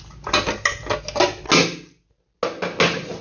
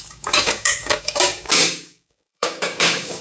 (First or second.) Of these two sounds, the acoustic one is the first